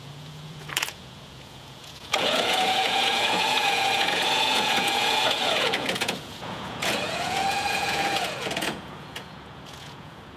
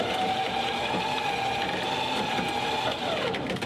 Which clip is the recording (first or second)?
second